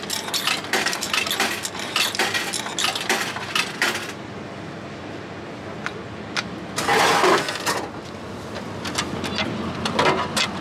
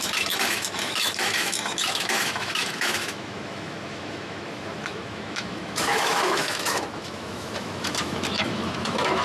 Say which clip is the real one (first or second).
first